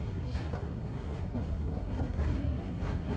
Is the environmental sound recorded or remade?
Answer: remade